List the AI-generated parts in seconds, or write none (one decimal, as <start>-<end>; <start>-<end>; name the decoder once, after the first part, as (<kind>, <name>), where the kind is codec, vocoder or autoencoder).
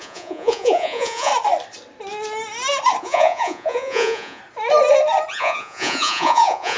0.0-1.3 (vocoder, Vocos); 3.0-4.4; 5.3-6.8